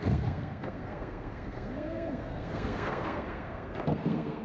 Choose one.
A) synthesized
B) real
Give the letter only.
A